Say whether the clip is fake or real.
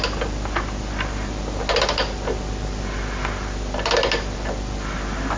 real